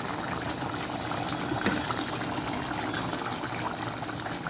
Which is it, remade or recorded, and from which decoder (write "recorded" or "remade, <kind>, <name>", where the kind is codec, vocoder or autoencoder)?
recorded